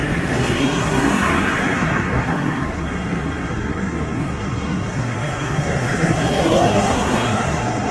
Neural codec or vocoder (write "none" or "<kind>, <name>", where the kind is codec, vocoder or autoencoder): codec, SNAC